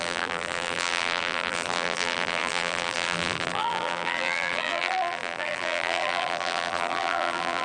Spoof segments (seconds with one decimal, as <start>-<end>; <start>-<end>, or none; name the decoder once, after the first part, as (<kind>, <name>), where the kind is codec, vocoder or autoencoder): 0.0-7.6 (vocoder, BigVGAN v2)

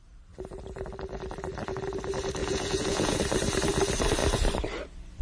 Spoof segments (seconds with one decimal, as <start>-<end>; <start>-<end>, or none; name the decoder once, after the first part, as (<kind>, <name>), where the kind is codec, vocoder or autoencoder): 2.4-3.2 (vocoder, Vocos)

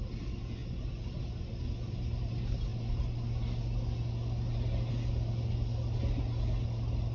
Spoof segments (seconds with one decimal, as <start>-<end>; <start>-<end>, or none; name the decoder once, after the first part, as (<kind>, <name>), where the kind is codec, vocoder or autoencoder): none

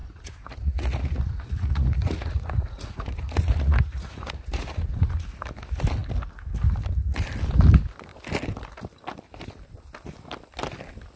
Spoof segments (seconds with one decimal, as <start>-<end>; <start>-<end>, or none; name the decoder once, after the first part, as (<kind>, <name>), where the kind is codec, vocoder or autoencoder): 0.0-5.3 (vocoder, Vocos)

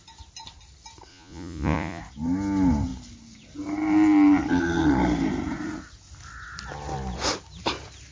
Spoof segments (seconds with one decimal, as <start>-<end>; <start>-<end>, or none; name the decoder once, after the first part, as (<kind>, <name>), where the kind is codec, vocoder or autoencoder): 1.1-2.0 (vocoder, Vocos)

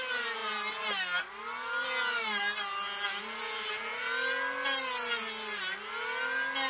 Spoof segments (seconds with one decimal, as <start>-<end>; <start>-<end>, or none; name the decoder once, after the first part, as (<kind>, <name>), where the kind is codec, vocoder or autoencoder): none

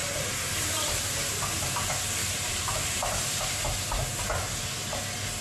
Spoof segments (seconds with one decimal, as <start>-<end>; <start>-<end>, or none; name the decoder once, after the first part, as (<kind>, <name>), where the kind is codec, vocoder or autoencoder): 0.0-1.4 (vocoder, BigVGAN v2); 2.2-3.6

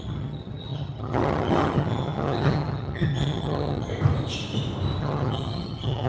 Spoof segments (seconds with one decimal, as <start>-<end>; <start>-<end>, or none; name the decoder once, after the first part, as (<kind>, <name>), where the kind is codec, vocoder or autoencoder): 0.0-3.9 (vocoder, HiFi-GAN); 5.0-6.1